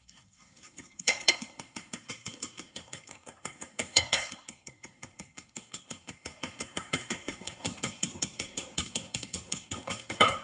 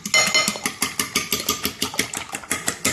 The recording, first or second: second